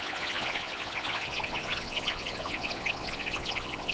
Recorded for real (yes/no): no